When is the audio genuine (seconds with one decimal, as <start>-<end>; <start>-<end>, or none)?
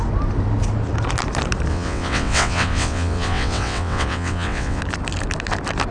0.0-1.7; 4.8-5.9